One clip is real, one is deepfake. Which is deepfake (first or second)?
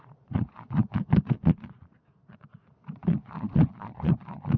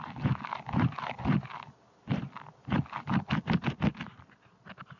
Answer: first